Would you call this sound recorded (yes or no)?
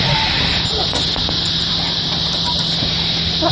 yes